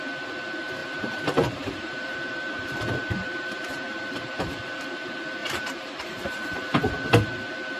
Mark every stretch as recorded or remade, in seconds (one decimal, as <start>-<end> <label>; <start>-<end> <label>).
0.0-0.8 recorded; 0.8-4.4 remade; 4.4-5.4 recorded; 5.4-6.9 remade; 6.9-7.8 recorded

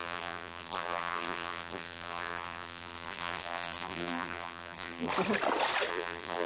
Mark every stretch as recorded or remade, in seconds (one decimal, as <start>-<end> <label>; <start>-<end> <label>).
0.0-5.1 remade; 5.1-5.9 recorded; 5.9-6.5 remade

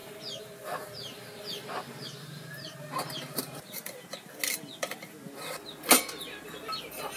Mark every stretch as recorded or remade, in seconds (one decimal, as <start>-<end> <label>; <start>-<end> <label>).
0.0-4.3 remade; 4.3-7.2 recorded

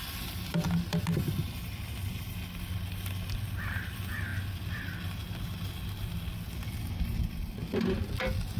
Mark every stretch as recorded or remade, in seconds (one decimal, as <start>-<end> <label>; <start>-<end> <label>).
0.0-8.6 recorded

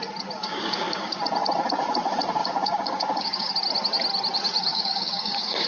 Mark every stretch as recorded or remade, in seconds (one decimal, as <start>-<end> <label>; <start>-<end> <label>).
0.0-0.4 recorded; 0.4-1.2 remade; 1.2-2.4 recorded; 2.4-3.5 remade; 3.5-4.7 recorded; 4.7-5.7 remade